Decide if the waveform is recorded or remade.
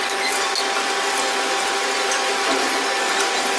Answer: recorded